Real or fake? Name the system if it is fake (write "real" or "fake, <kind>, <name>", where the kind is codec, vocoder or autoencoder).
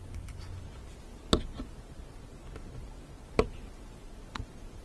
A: real